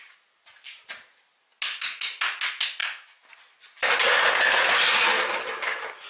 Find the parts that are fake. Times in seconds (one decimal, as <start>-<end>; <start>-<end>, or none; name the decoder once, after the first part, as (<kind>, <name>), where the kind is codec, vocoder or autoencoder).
2.8-3.3 (autoencoder, DAC-VAE)